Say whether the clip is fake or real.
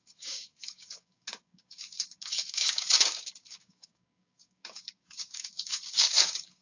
fake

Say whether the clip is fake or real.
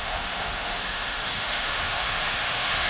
fake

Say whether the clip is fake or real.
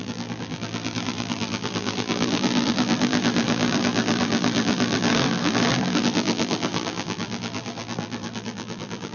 fake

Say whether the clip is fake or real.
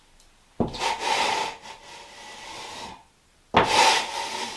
real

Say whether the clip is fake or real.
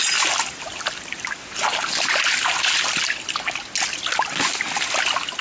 real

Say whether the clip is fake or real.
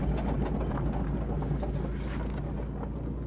real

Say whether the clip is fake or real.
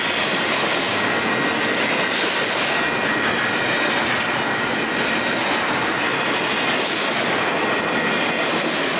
real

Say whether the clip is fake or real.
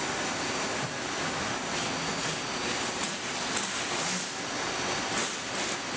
real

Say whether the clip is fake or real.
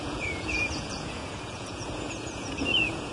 fake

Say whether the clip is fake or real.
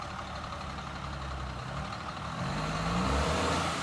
real